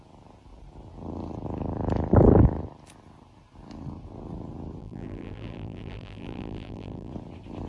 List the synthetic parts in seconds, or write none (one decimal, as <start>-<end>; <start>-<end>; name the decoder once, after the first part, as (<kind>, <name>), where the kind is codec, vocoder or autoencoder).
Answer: 4.8-7.1 (vocoder, BigVGAN v2)